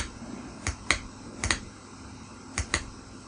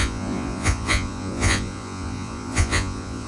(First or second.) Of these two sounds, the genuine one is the first